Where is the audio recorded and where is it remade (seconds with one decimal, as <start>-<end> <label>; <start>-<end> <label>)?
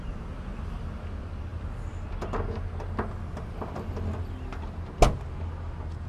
0.0-6.1 recorded